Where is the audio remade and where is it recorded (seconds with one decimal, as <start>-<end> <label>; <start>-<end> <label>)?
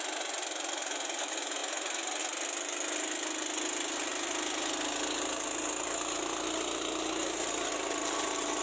0.0-8.6 recorded